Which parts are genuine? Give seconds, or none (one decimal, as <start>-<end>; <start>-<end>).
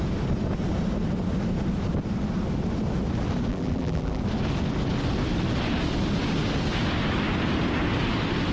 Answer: 0.0-3.5; 4.2-8.5